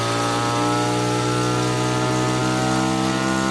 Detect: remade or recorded recorded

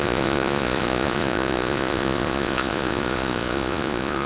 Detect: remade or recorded remade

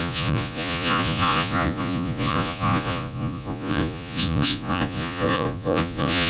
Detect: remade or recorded remade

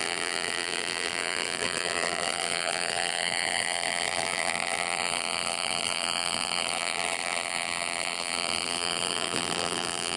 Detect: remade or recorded remade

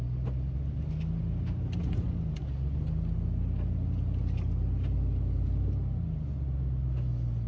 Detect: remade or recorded recorded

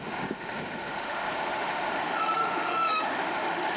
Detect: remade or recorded remade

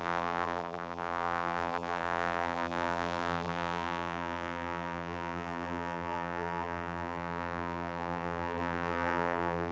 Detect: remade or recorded remade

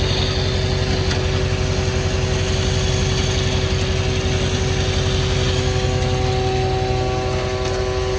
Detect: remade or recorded recorded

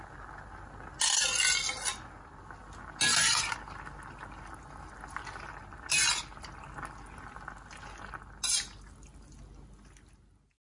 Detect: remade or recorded recorded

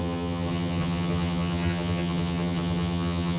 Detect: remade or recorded remade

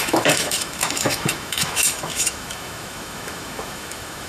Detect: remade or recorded remade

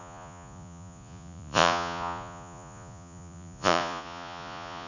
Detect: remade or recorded remade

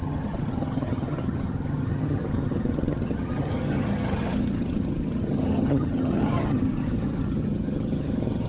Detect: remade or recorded remade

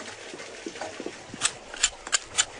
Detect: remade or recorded recorded